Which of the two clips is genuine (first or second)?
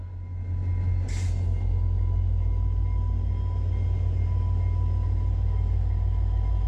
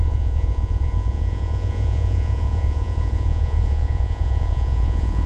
first